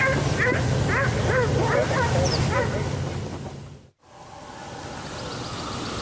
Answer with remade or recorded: recorded